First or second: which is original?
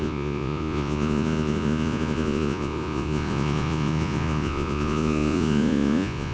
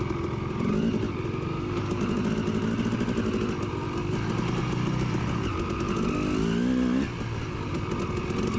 second